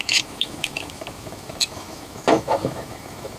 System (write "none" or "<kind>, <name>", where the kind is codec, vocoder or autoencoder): autoencoder, DAC-VAE